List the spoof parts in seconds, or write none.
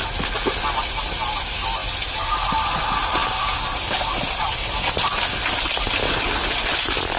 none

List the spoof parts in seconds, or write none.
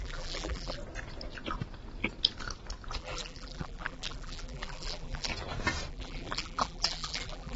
0.0-0.8 (vocoder, BigVGAN v2); 3.0-5.3; 5.9-7.6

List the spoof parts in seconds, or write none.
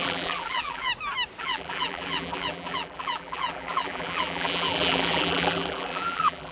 0.0-0.9 (vocoder, BigVGAN v2); 1.4-6.5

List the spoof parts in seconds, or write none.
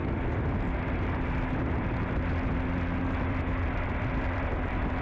3.0-5.0 (vocoder, BigVGAN v2)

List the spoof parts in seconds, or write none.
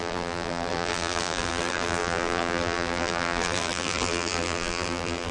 0.0-5.3 (vocoder, BigVGAN v2)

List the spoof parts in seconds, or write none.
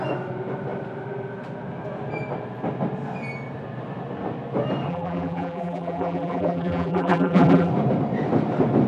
4.9-7.7 (vocoder, BigVGAN v2)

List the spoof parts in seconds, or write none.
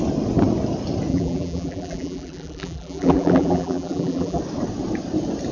1.1-4.4 (vocoder, BigVGAN v2)